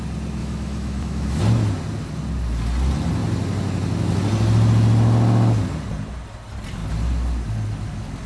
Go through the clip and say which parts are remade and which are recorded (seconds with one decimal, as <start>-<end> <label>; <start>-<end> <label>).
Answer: 0.0-0.4 recorded; 0.4-1.4 remade; 1.4-8.3 recorded

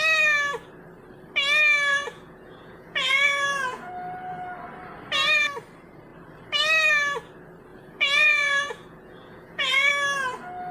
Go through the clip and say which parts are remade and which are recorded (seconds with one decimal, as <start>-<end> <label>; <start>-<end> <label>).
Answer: 0.0-1.9 recorded; 1.9-3.9 remade; 3.9-7.7 recorded; 7.7-9.9 remade; 9.9-10.7 recorded

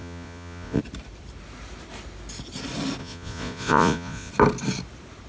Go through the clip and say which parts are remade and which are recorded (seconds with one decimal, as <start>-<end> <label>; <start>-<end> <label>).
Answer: 0.0-0.8 remade; 0.8-3.0 recorded; 3.0-4.3 remade; 4.3-5.3 recorded

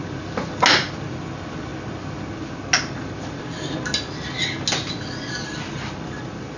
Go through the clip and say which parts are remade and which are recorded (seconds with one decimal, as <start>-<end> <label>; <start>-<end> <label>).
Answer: 0.0-6.6 recorded

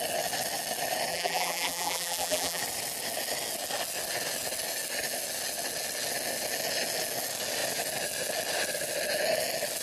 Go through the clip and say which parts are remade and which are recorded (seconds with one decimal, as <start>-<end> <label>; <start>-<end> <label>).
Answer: 0.0-1.1 recorded; 1.1-2.6 remade; 2.6-9.8 recorded

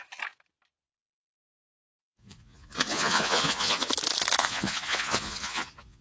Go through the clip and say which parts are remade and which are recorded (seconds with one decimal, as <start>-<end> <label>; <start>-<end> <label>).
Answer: 0.0-1.8 recorded; 1.8-3.9 remade; 3.9-4.4 recorded; 4.4-6.0 remade

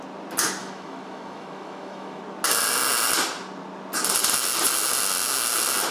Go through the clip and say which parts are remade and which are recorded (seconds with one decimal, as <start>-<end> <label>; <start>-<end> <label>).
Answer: 0.0-0.6 recorded; 0.6-2.2 remade; 2.2-5.9 recorded

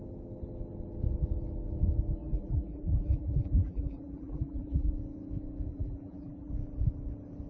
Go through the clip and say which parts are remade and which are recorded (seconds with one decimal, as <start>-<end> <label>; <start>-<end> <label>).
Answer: 0.0-2.2 recorded; 2.2-4.9 remade; 4.9-5.7 recorded; 5.7-6.5 remade; 6.5-7.5 recorded